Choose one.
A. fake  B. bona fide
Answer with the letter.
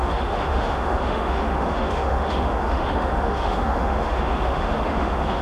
A